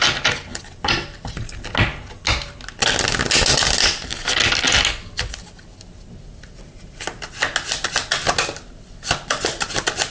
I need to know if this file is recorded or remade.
recorded